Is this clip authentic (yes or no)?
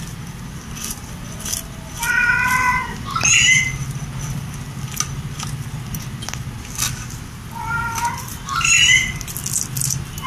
yes